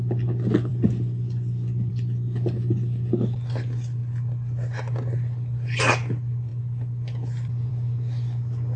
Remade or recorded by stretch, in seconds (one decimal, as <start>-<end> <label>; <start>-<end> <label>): 0.0-8.8 recorded